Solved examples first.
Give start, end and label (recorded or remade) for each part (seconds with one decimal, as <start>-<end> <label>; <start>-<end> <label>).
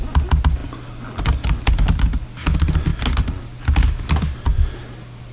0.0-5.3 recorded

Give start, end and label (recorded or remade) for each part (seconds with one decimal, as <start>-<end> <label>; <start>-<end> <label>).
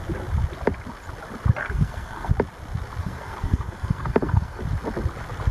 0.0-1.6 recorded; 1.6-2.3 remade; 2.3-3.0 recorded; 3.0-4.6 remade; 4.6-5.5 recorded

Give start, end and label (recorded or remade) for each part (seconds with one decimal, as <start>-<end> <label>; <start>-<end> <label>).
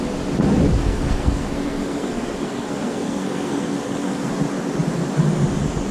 0.0-0.8 recorded; 0.8-4.3 remade; 4.3-5.9 recorded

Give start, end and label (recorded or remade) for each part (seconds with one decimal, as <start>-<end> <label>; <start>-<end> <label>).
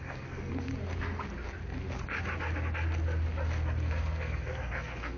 0.0-0.7 remade; 0.7-3.8 recorded; 3.8-5.2 remade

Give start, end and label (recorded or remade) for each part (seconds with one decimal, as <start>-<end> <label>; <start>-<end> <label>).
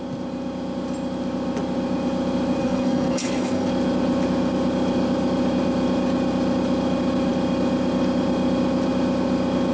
0.0-2.6 recorded; 2.6-3.7 remade; 3.7-9.7 recorded